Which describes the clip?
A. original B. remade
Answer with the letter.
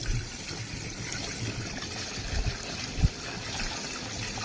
B